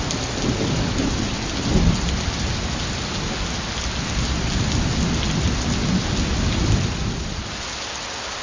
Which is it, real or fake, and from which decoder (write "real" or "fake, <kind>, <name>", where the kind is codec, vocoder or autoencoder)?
real